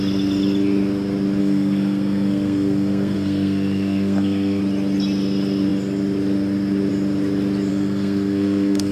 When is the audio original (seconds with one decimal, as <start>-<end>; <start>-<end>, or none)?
0.0-1.4; 4.6-7.7